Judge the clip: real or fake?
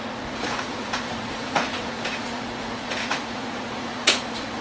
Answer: fake